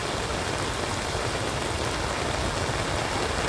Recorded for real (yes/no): yes